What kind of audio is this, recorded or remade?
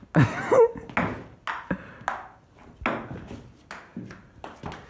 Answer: recorded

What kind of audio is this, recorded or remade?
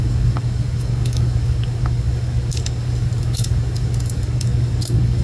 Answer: remade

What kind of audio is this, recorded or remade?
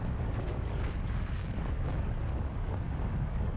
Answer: remade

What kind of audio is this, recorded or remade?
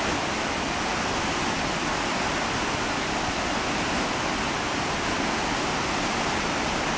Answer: recorded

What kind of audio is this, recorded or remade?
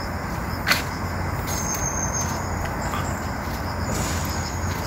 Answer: recorded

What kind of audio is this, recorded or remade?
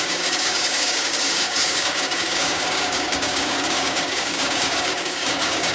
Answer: remade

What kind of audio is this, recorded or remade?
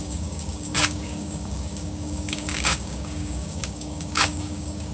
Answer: remade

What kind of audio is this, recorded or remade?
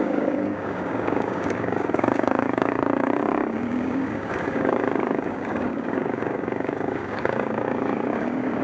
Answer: remade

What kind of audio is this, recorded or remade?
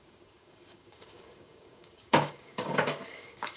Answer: remade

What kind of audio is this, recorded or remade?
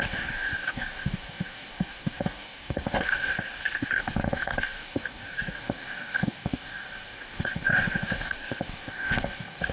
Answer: remade